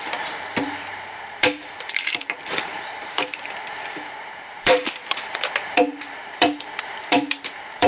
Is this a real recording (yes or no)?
no